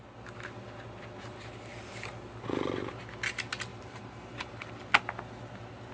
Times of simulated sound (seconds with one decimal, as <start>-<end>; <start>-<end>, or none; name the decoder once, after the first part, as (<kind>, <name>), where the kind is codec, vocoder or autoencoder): 3.7-4.7 (vocoder, BigVGAN v2)